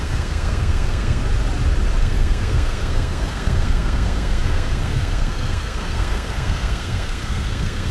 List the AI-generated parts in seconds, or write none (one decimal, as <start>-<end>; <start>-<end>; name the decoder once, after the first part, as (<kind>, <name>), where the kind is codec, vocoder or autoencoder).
0.0-1.2 (codec, SNAC); 2.0-7.9